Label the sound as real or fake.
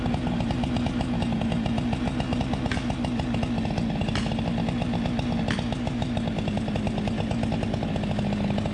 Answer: real